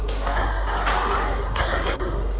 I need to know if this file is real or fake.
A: fake